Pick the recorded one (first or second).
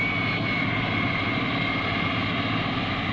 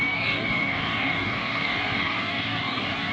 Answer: first